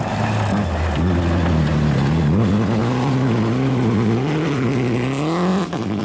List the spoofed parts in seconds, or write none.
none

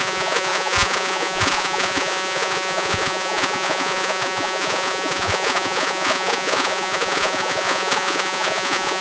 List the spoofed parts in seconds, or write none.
0.0-9.0 (vocoder, Vocos)

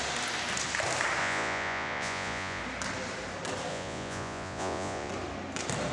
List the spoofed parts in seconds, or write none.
1.2-2.6 (vocoder, Vocos); 3.7-5.1

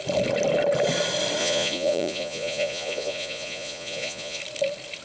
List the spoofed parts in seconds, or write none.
1.4-4.4 (vocoder, Vocos)

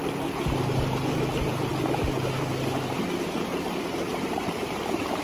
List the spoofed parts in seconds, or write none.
none

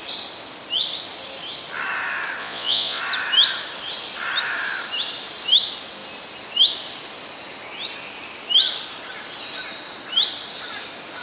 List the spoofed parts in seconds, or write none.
2.4-3.0 (vocoder, Vocos)

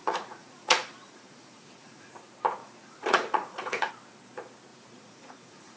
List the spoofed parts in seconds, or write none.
0.0-2.1 (vocoder, Vocos); 2.6-3.9; 4.7-5.8

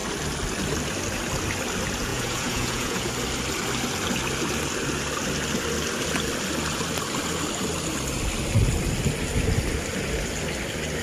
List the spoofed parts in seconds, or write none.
2.1-3.1 (vocoder, Vocos)